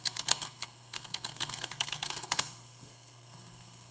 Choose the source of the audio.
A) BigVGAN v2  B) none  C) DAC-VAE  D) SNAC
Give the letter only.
D